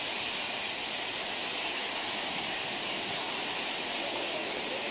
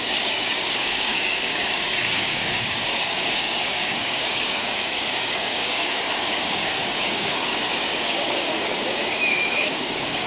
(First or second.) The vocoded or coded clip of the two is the second